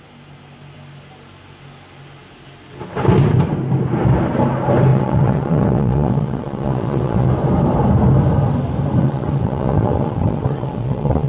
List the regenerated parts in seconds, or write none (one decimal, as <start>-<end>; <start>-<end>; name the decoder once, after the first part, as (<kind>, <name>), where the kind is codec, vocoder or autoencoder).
4.9-7.3 (vocoder, WaveNeXt); 9.0-11.3